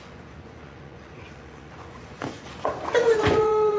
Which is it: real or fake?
fake